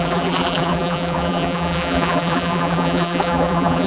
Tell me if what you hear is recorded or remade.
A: remade